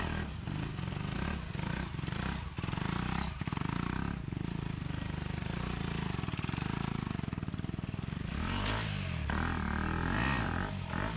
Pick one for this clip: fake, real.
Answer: real